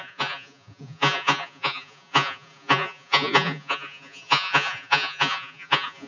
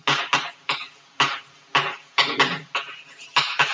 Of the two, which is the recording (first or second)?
second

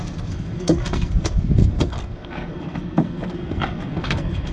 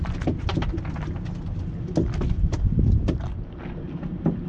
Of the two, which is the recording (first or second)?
second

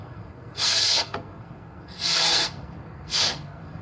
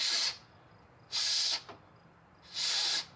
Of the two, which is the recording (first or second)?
second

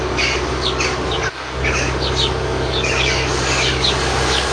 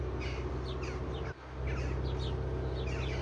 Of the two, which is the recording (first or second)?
second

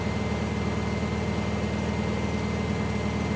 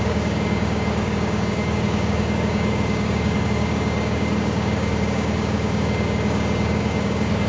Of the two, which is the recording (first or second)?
first